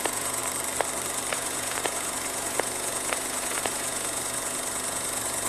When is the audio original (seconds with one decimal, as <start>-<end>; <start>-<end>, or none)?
0.4-1.3